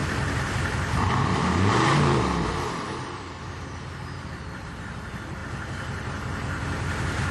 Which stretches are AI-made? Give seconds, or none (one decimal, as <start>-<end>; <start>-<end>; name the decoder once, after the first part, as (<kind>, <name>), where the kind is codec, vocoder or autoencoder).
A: 0.0-5.4 (vocoder, BigVGAN v2)